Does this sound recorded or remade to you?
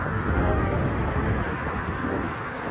remade